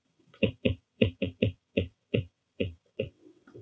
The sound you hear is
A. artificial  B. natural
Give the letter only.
A